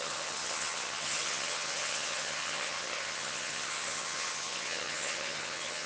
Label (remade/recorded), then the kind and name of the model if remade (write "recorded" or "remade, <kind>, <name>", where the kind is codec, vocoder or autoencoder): remade, vocoder, HiFi-GAN